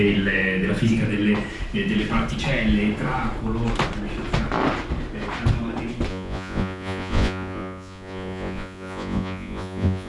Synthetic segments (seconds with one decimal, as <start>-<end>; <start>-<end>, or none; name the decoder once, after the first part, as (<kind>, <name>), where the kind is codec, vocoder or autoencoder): 6.1-10.1 (vocoder, Vocos)